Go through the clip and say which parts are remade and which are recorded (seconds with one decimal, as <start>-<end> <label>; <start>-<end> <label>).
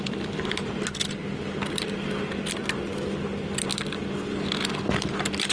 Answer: 0.0-5.5 recorded